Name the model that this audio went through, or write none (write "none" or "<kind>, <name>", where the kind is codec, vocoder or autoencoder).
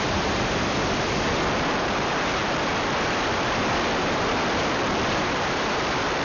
vocoder, BigVGAN v2